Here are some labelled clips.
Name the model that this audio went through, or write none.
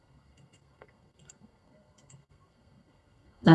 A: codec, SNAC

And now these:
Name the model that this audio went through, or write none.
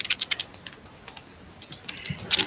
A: none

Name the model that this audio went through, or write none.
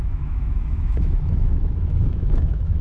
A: autoencoder, DAC-VAE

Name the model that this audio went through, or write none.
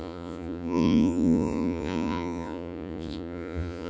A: vocoder, Vocos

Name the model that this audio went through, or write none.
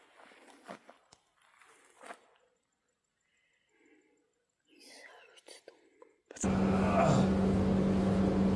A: none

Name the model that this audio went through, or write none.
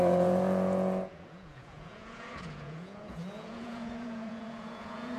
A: vocoder, Vocos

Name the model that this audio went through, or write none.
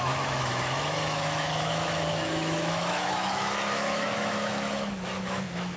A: autoencoder, DAC-VAE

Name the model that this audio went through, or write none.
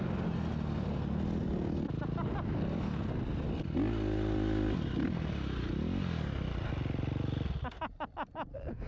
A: none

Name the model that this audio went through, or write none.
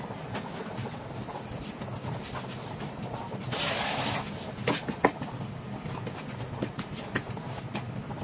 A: none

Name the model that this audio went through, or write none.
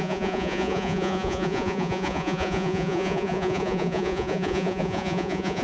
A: vocoder, Vocos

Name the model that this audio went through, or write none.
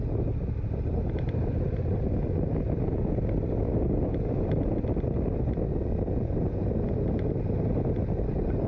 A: none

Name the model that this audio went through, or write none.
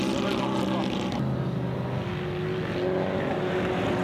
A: none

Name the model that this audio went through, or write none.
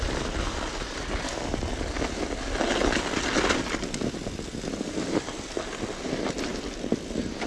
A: none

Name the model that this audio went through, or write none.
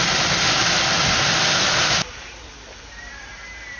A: none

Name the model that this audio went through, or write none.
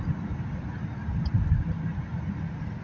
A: none